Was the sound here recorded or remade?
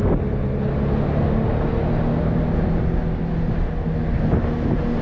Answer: recorded